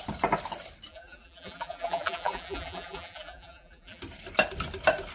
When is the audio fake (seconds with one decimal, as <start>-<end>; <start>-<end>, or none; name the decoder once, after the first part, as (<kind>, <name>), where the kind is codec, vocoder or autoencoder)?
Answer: 0.9-4.0 (vocoder, BigVGAN v2)